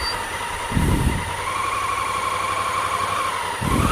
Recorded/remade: recorded